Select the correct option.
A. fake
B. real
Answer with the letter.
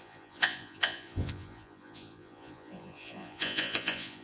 A